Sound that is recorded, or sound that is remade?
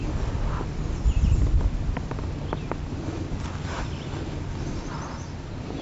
recorded